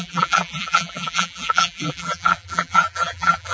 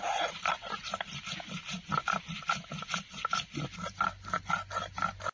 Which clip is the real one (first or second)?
second